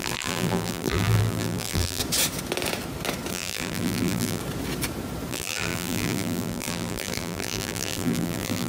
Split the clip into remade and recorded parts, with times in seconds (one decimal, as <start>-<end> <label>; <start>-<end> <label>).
0.0-2.0 remade; 2.0-3.3 recorded; 3.3-4.4 remade; 4.4-5.3 recorded; 5.3-8.7 remade